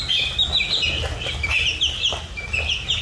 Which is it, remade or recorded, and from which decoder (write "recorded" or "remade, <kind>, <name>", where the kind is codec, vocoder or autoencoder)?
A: recorded